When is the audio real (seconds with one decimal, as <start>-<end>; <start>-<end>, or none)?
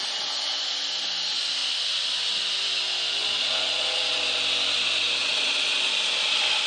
0.0-3.2; 4.2-5.2; 5.9-6.7